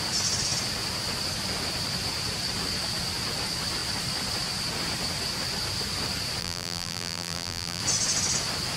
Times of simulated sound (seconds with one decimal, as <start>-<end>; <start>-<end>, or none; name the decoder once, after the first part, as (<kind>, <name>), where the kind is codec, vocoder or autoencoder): 6.4-7.8 (vocoder, BigVGAN v2)